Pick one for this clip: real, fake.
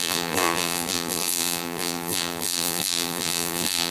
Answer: fake